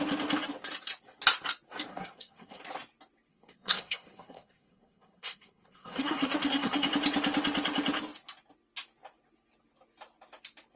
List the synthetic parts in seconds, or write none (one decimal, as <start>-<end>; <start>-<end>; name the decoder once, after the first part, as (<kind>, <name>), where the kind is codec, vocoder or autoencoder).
1.9-2.6 (codec, SNAC); 3.3-6.9